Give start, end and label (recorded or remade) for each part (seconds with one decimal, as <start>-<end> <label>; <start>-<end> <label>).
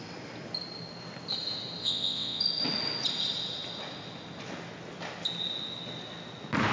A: 0.0-1.8 recorded; 1.8-2.4 remade; 2.4-6.7 recorded